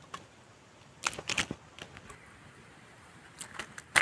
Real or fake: real